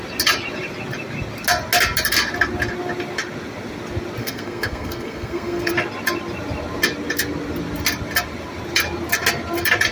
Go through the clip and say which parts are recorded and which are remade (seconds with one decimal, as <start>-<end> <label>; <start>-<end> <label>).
0.0-4.2 recorded; 4.2-5.7 remade; 5.7-9.9 recorded